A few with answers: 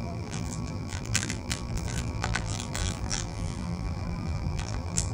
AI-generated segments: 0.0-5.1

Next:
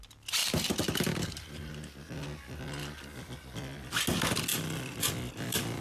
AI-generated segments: 0.4-1.7; 2.8-3.9; 4.5-5.8

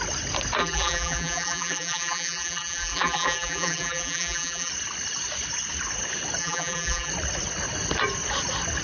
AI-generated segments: 0.6-4.7; 6.4-7.1

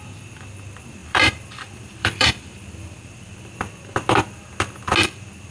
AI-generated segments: 1.0-3.4

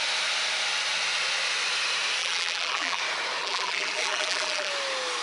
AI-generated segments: 2.2-3.0; 3.4-4.7

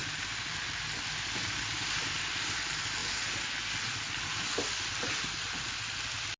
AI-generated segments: 0.0-2.6